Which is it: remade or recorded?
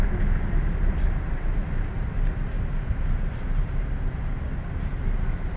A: recorded